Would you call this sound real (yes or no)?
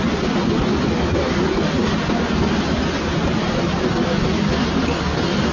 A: yes